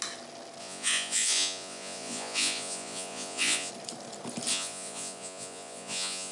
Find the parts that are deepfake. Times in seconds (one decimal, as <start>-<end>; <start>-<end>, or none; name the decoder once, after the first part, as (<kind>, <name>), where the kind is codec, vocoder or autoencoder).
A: 0.6-3.7 (vocoder, Vocos); 4.5-6.3